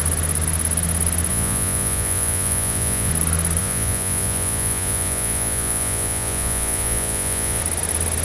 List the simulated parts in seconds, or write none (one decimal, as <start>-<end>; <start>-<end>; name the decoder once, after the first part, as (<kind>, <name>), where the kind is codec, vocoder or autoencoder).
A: 1.3-3.1 (vocoder, Vocos); 3.6-7.6

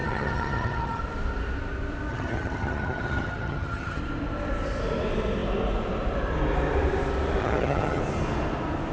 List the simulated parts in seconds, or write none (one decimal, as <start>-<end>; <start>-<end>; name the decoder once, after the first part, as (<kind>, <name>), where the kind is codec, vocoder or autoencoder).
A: 0.0-1.0 (vocoder, HiFi-GAN); 2.1-4.0; 7.4-8.0

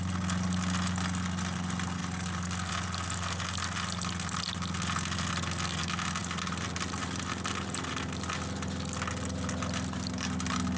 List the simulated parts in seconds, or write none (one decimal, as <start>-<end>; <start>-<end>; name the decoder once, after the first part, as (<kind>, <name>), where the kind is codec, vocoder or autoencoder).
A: none

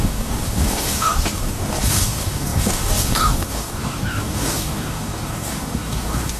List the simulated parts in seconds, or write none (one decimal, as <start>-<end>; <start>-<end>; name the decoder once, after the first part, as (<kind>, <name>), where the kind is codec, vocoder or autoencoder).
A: 0.0-6.4 (codec, DAC)

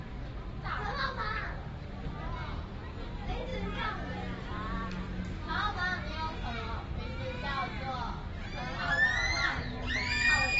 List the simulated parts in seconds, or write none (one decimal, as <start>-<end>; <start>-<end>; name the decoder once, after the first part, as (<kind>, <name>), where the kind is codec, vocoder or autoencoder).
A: none

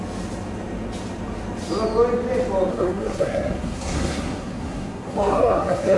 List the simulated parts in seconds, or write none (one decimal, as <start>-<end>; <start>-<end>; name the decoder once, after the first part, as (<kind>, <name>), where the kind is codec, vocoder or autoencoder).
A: 2.7-6.0 (codec, SNAC)

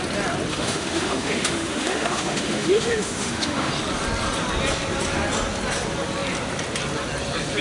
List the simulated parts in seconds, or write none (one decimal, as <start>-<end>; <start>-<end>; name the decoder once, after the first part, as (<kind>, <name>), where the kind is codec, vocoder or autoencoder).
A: 0.5-3.7 (autoencoder, DAC-VAE)